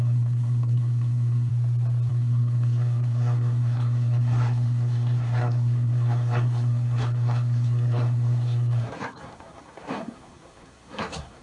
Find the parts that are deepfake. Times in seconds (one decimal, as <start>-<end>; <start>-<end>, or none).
0.0-1.5; 2.1-11.4

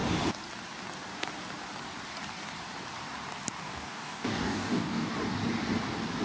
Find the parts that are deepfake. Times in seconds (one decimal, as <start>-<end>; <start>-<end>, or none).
3.6-5.1

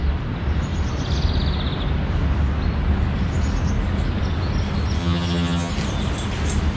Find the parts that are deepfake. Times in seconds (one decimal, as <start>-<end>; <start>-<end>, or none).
5.0-5.7

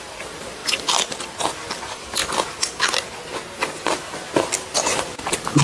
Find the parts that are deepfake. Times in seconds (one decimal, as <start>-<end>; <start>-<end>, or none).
0.0-0.6; 1.8-2.2; 4.1-5.6